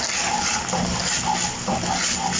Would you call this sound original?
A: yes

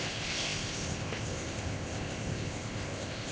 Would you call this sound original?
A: no